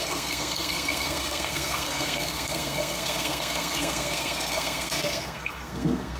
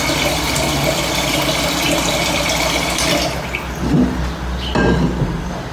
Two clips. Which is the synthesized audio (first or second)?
first